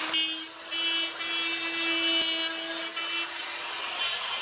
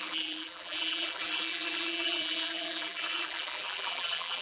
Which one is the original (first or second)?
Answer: first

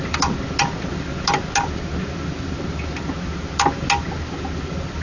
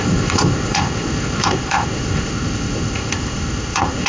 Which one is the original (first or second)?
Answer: first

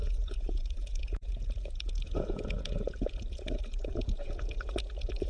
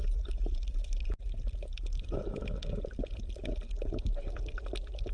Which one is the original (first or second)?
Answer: second